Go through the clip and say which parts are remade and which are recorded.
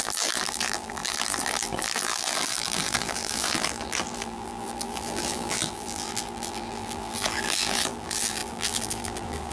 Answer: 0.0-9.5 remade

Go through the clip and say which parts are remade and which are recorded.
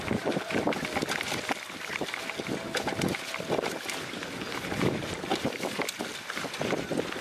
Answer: 0.0-1.0 recorded; 1.0-1.5 remade; 1.5-5.3 recorded; 5.3-6.0 remade; 6.0-7.2 recorded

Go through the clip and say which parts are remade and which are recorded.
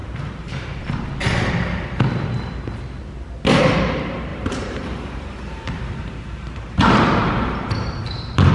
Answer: 0.0-0.7 remade; 0.7-4.3 recorded; 4.3-8.5 remade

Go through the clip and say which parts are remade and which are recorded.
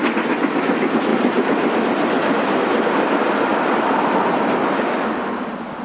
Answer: 0.0-3.5 recorded; 3.5-4.1 remade; 4.1-5.8 recorded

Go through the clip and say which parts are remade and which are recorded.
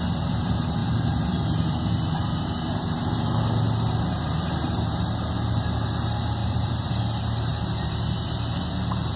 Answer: 0.0-0.8 recorded; 0.8-1.9 remade; 1.9-6.4 recorded; 6.4-6.9 remade; 6.9-9.2 recorded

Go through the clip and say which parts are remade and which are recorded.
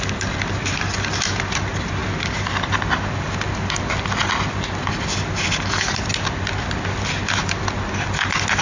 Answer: 0.0-8.6 recorded